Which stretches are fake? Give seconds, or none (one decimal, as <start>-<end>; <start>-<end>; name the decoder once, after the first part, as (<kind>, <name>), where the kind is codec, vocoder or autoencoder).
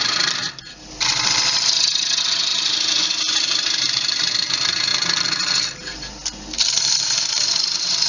2.5-4.5 (vocoder, BigVGAN v2)